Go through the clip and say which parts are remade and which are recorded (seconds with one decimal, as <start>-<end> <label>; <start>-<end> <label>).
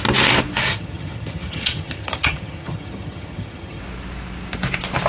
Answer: 0.0-0.7 recorded; 0.7-3.8 remade; 3.8-5.1 recorded